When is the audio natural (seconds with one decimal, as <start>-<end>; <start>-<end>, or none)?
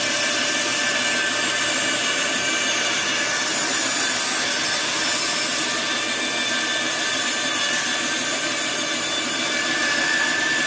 0.0-10.7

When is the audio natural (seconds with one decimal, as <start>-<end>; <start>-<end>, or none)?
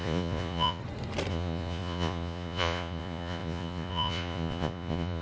0.8-1.3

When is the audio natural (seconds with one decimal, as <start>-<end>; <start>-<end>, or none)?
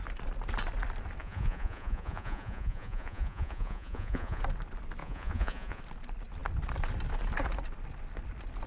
0.0-1.2; 4.4-5.0; 5.8-8.7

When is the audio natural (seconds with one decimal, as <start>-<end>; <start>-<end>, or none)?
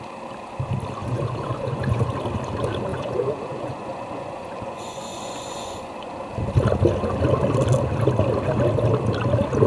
0.0-1.0; 2.0-2.9; 6.1-9.7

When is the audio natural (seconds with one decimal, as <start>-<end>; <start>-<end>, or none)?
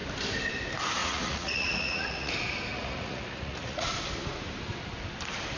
0.0-1.0; 2.3-2.7; 3.9-5.6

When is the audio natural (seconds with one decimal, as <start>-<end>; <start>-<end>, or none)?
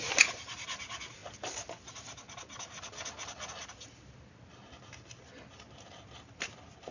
0.0-6.9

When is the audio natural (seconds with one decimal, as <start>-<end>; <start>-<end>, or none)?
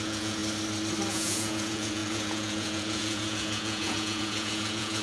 0.4-1.1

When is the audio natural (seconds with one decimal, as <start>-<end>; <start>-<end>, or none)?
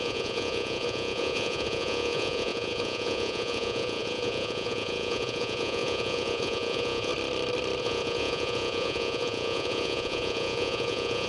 7.1-7.8